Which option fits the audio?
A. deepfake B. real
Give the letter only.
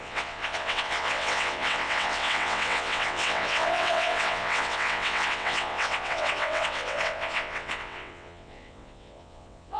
A